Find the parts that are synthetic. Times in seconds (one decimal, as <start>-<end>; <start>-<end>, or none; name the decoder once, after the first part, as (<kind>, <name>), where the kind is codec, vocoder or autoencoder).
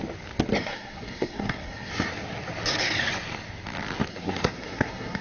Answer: 0.6-1.9 (codec, SNAC); 4.1-5.2